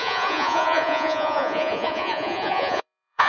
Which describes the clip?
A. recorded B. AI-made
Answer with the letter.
B